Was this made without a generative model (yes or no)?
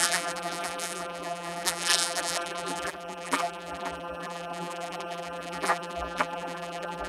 no